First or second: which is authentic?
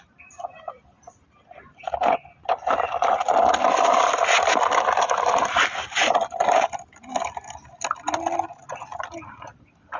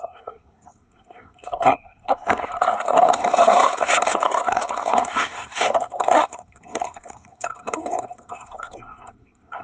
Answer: first